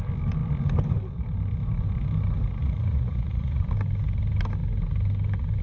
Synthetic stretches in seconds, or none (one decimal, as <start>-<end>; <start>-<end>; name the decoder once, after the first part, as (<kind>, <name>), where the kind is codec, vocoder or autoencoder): 2.6-3.6 (vocoder, Vocos)